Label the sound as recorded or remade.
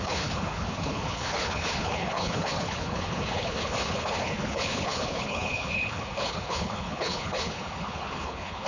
remade